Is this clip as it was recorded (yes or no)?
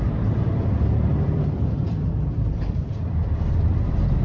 no